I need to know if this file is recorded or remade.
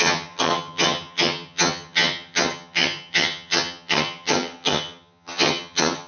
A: remade